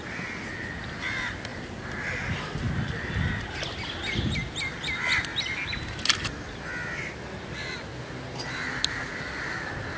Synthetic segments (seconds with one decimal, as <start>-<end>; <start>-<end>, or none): none